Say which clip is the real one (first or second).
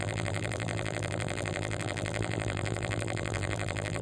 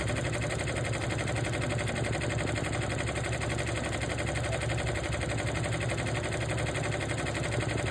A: second